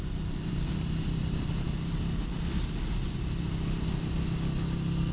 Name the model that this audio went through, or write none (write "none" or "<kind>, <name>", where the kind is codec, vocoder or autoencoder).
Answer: none